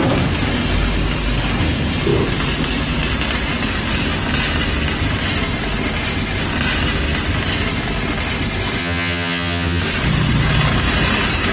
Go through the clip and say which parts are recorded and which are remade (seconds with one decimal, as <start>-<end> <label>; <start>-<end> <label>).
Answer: 0.0-8.8 recorded; 8.8-9.8 remade; 9.8-11.5 recorded